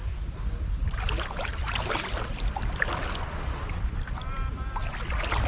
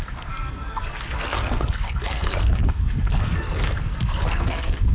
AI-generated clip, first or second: second